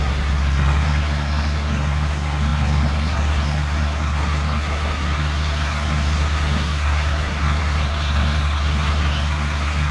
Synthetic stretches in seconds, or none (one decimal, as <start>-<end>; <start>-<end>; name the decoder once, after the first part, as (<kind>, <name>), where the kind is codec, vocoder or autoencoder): 0.0-9.9 (codec, SNAC)